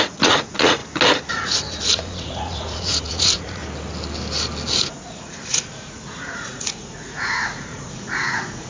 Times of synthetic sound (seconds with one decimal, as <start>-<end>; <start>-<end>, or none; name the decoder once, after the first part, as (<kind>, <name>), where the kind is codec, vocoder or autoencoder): 0.0-0.8 (vocoder, Vocos); 1.3-3.6; 4.8-8.7